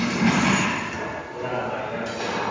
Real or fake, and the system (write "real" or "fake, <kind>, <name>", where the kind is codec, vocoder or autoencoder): real